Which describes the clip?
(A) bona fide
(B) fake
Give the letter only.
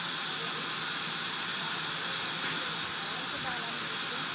A